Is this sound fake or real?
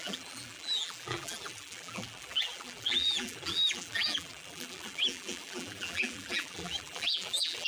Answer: fake